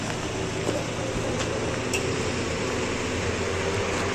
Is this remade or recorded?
recorded